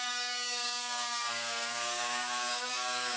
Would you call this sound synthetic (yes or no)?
yes